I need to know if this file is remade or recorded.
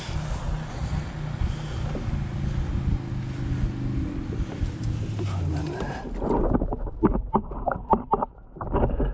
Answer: recorded